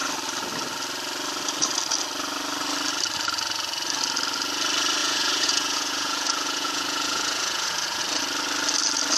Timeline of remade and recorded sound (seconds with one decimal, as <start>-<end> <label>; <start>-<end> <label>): 0.0-5.0 recorded; 5.0-8.0 remade; 8.0-9.2 recorded